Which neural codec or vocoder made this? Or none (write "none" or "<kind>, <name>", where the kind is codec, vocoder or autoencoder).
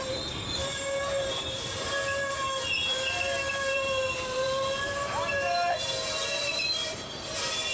vocoder, BigVGAN v2